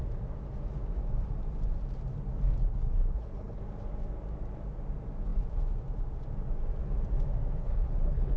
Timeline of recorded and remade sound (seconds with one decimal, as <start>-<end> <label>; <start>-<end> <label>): 0.0-2.6 recorded; 2.6-3.6 remade; 3.6-7.6 recorded; 7.6-8.4 remade